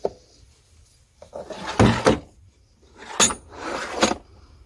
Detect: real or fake real